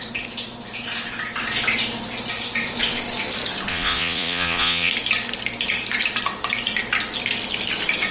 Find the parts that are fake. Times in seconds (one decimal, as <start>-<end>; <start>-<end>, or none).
3.7-4.9